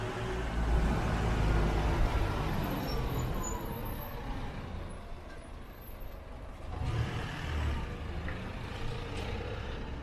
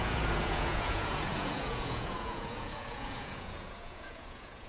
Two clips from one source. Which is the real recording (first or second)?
first